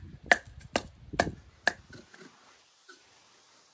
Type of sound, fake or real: real